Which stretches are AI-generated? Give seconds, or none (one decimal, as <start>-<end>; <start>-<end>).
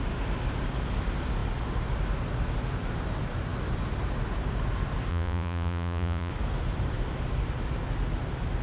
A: 5.1-6.3